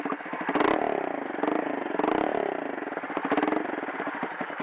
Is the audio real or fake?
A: real